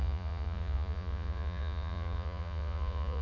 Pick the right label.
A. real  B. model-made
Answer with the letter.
B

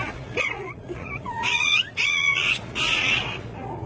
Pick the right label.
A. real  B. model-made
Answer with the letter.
B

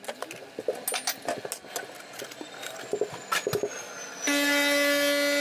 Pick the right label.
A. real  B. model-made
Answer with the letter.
A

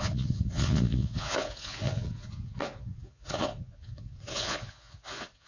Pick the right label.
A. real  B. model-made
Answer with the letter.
B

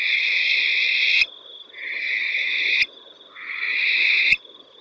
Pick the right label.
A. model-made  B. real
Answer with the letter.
B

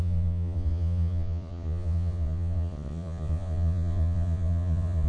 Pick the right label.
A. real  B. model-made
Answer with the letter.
B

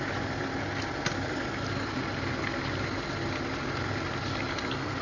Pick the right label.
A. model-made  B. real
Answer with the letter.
B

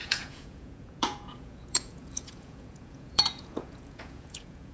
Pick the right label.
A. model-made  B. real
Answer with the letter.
A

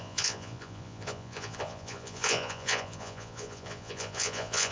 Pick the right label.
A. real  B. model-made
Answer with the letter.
B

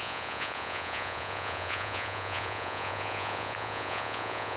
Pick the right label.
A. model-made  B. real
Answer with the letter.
A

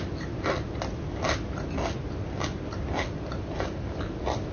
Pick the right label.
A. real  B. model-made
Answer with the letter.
A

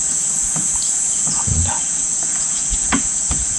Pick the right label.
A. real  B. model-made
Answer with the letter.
B